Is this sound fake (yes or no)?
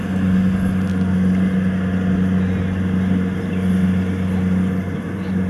no